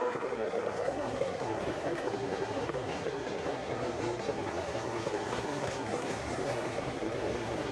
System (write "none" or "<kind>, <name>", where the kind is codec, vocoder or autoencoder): codec, SNAC